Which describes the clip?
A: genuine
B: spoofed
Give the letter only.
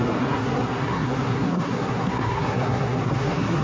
B